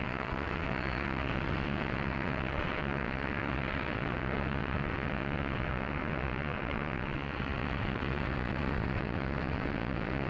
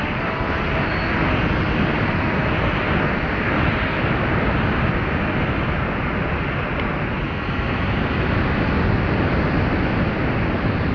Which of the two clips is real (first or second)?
second